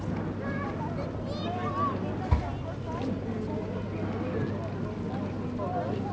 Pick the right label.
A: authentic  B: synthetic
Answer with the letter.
A